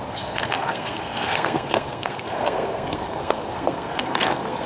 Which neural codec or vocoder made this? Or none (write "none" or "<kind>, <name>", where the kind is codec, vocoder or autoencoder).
codec, SNAC